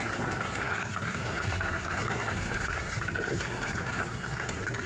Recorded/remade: remade